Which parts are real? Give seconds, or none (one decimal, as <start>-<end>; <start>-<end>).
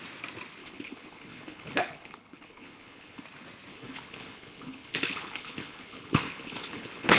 0.0-0.6; 3.2-3.7